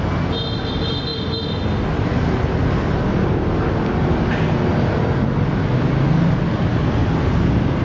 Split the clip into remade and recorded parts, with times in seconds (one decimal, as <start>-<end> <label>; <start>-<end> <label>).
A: 0.0-7.8 recorded

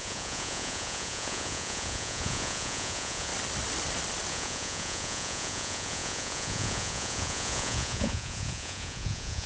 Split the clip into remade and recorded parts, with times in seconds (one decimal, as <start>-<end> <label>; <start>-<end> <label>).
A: 0.0-3.3 remade; 3.3-4.3 recorded; 4.3-9.5 remade